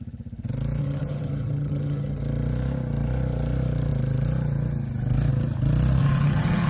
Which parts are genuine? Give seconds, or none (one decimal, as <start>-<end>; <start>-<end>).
0.0-0.8; 2.2-6.0